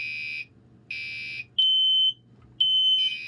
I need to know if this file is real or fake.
real